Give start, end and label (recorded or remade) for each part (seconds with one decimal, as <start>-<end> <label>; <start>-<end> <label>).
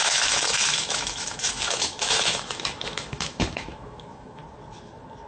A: 0.0-4.4 remade; 4.4-5.3 recorded